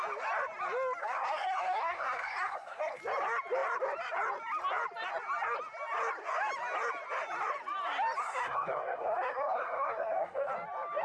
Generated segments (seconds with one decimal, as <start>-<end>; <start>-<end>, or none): 1.0-3.0; 8.2-10.5